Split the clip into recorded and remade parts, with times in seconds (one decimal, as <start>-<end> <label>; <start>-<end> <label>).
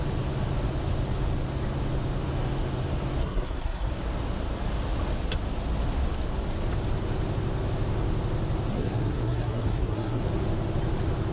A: 0.0-3.2 recorded; 3.2-3.9 remade; 3.9-8.7 recorded; 8.7-10.2 remade; 10.2-11.3 recorded